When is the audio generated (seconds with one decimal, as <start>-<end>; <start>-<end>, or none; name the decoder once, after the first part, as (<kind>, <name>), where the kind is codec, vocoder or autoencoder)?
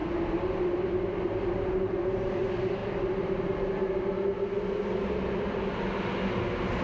0.0-1.2 (vocoder, BigVGAN v2); 2.8-3.9